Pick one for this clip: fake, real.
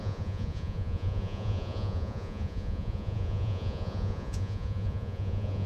fake